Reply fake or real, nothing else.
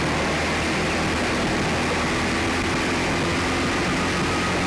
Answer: real